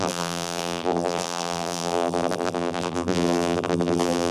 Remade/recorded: remade